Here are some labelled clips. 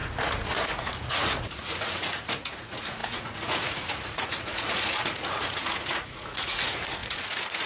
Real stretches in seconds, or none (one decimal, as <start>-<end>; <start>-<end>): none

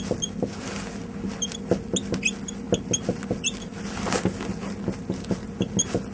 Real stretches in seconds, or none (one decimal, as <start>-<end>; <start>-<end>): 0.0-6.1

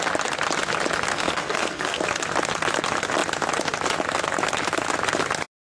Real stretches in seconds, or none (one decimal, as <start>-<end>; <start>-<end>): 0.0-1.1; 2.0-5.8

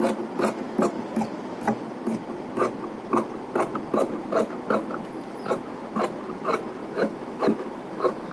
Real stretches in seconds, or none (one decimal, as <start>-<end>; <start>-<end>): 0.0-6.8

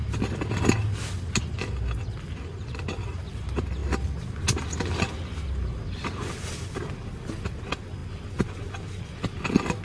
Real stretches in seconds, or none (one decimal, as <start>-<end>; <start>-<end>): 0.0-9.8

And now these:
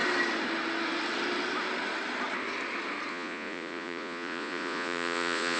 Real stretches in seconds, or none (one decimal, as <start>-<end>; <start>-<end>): 0.0-3.1

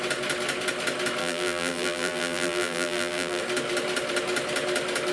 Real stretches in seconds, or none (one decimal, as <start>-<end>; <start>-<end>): 0.0-1.2; 3.4-5.1

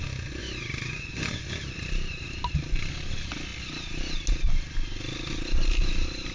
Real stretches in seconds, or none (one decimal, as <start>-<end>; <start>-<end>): 0.0-0.4; 1.5-6.3